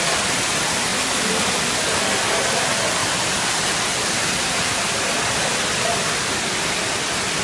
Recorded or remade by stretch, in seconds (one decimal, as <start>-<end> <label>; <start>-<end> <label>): 0.0-3.0 recorded; 3.0-7.4 remade